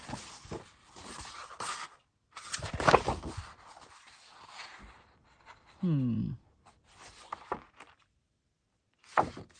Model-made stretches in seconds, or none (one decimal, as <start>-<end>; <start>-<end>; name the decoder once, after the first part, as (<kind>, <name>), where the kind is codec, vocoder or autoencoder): none